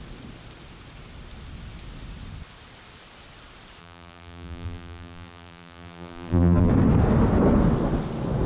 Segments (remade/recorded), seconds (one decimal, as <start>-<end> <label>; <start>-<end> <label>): 0.0-3.8 recorded; 3.8-6.7 remade; 6.7-8.5 recorded